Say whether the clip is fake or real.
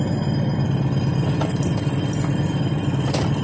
real